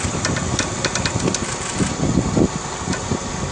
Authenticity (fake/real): real